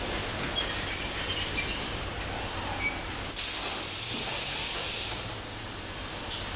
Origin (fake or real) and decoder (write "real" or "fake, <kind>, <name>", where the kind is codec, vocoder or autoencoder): real